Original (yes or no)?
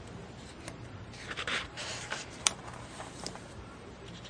no